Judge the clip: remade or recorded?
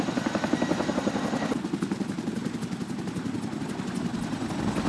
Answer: recorded